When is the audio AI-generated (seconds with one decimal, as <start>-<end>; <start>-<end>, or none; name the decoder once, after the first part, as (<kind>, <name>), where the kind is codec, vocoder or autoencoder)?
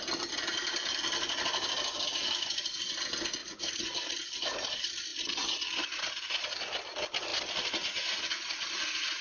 3.4-3.9 (vocoder, Vocos)